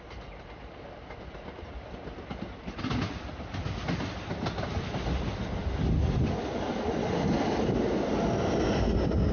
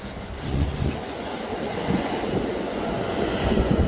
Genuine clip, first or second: first